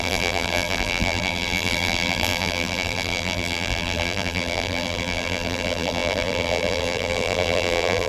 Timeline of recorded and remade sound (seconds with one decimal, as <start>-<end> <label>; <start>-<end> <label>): 0.0-8.1 remade